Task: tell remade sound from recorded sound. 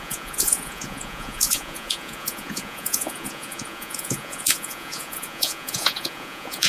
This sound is remade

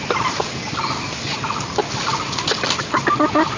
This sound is recorded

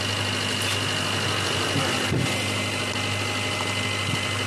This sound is recorded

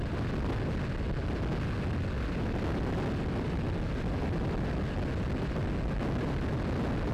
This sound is recorded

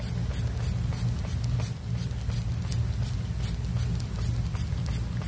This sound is recorded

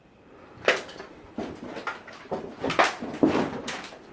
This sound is recorded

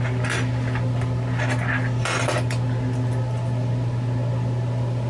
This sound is recorded